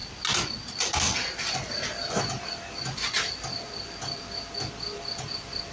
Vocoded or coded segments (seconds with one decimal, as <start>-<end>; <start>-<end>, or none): none